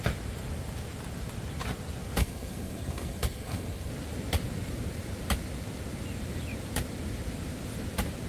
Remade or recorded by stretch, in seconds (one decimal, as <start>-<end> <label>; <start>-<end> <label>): 0.0-2.2 recorded; 2.2-3.9 remade; 3.9-8.3 recorded

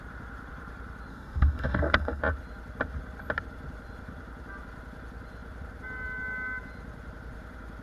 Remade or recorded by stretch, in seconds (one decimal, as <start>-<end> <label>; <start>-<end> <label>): 0.0-1.1 recorded; 1.1-2.2 remade; 2.2-7.8 recorded

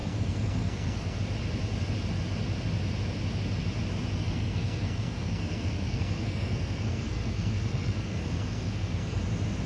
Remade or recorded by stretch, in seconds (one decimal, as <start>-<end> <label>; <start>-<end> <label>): 0.0-1.2 remade; 1.2-4.2 recorded; 4.2-9.2 remade; 9.2-9.7 recorded

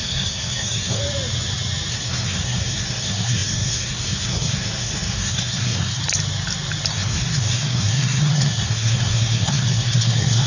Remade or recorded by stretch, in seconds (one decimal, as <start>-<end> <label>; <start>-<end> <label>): 0.0-1.0 remade; 1.0-1.9 recorded; 1.9-6.0 remade; 6.0-6.9 recorded; 6.9-10.5 remade

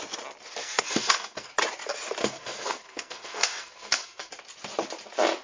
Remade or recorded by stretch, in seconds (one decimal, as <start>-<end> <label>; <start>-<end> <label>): 0.0-0.6 recorded; 0.6-1.5 remade; 1.5-2.2 recorded; 2.2-4.3 remade; 4.3-5.4 recorded

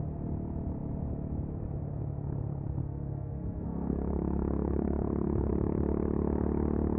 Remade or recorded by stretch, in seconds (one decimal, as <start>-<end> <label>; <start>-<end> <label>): 0.0-2.8 recorded; 2.8-5.5 remade; 5.5-7.0 recorded

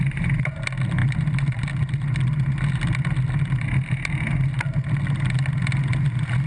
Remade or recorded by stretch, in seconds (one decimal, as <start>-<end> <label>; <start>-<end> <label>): 0.0-6.5 recorded

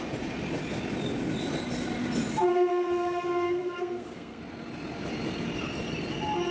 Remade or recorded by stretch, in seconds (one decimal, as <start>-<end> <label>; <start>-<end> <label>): 0.0-2.5 recorded; 2.5-4.4 remade; 4.4-6.5 recorded